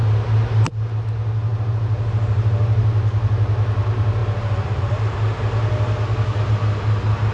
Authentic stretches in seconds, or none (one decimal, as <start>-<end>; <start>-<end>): 0.0-4.2; 5.6-7.3